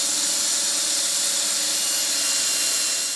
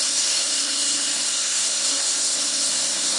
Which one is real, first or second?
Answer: first